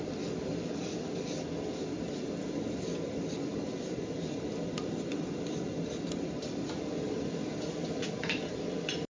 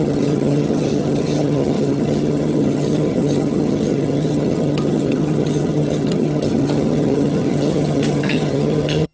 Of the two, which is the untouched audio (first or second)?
first